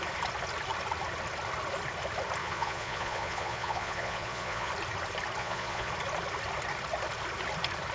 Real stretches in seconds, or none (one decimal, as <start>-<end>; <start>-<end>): 0.0-2.4; 4.7-5.4; 5.9-7.9